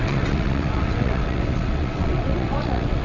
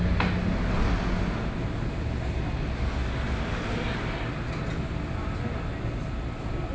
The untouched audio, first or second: second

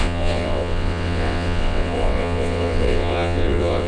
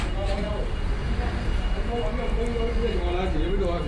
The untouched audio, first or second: second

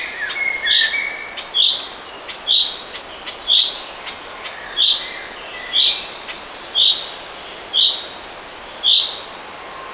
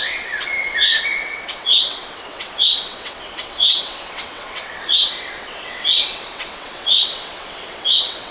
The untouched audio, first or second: first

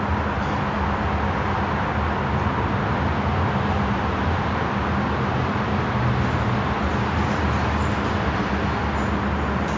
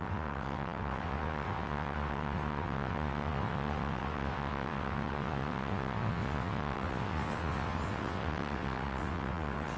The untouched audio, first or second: first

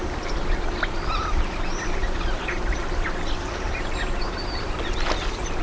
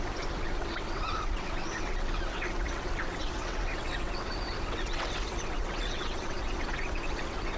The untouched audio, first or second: first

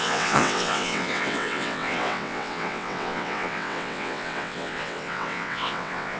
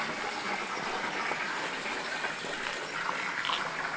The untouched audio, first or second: second